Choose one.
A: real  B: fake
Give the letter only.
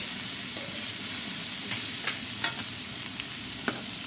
A